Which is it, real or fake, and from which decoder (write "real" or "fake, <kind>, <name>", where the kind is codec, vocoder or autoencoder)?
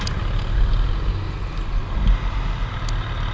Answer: real